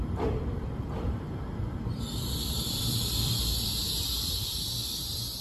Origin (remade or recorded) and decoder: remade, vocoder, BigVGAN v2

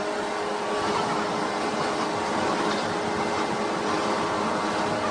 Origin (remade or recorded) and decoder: recorded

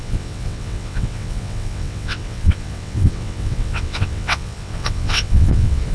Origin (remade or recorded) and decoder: remade, vocoder, WaveNeXt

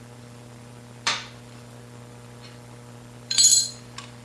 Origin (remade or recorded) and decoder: remade, vocoder, BigVGAN v2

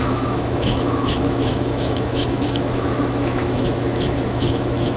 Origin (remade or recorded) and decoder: remade, autoencoder, DAC-VAE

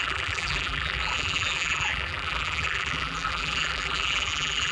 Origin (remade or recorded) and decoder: remade, vocoder, BigVGAN v2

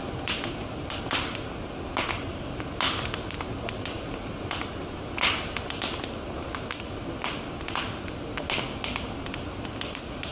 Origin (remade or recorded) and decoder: recorded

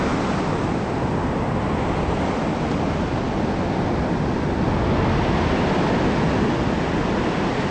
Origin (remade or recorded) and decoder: recorded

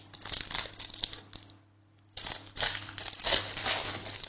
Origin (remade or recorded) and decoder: recorded